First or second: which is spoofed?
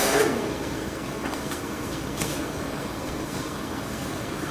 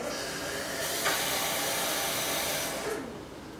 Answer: first